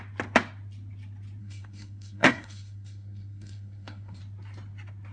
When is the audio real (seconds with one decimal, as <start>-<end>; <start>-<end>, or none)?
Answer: 0.0-1.4; 4.2-5.1